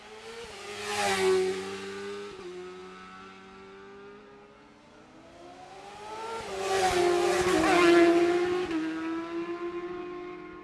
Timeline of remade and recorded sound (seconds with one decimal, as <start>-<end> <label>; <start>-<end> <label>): 0.0-10.6 recorded